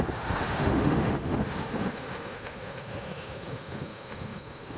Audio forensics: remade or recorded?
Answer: remade